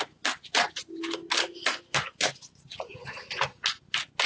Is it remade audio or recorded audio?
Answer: recorded